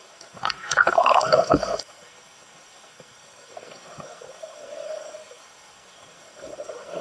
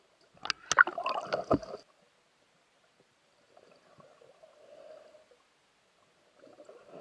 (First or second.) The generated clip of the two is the first